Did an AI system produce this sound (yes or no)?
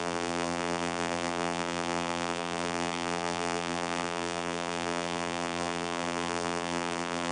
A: yes